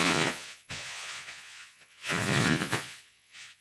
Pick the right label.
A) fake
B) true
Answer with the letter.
A